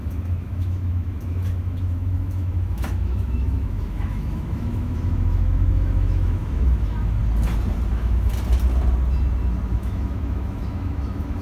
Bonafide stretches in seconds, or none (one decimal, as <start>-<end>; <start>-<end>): 7.2-7.9; 8.3-9.7